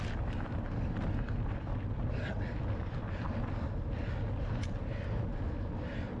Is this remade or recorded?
recorded